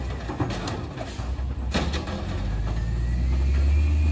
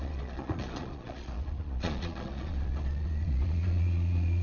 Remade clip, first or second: second